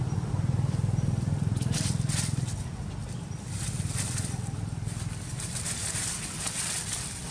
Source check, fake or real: real